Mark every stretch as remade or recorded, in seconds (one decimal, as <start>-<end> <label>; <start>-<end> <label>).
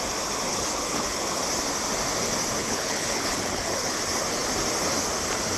0.0-0.5 recorded; 0.5-1.4 remade; 1.4-2.6 recorded; 2.6-4.0 remade; 4.0-5.6 recorded